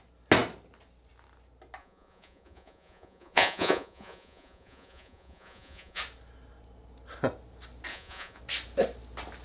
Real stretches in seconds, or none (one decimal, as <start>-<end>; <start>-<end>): 0.0-1.8; 6.0-7.9; 8.4-9.4

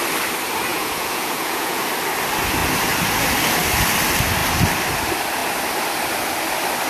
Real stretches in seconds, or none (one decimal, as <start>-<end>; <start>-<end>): 0.0-0.7; 1.8-6.9

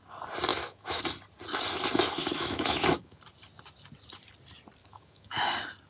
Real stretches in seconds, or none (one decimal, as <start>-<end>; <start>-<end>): 0.0-0.5; 1.0-2.2; 3.2-4.8; 5.5-5.9